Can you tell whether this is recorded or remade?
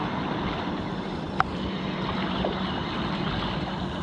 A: recorded